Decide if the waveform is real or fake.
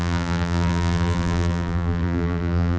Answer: fake